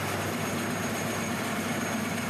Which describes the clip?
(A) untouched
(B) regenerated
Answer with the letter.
B